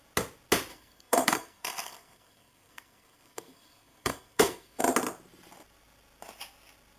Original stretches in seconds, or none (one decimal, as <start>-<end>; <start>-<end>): 0.0-0.7; 4.8-7.0